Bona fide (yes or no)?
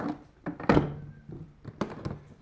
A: yes